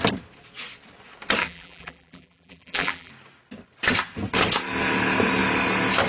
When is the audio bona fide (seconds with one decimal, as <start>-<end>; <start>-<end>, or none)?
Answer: 0.0-1.4; 3.1-6.1